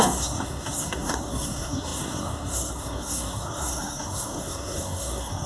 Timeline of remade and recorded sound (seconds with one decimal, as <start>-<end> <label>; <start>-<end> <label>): 0.0-5.5 remade